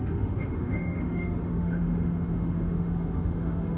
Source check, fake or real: fake